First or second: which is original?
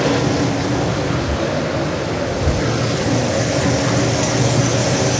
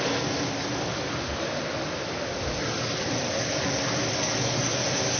first